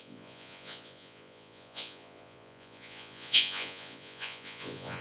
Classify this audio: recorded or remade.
remade